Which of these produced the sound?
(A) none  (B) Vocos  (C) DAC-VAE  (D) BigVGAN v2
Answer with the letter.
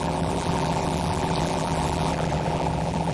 D